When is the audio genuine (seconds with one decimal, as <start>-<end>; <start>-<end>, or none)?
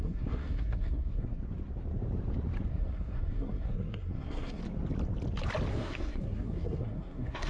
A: 1.4-2.7; 4.6-5.7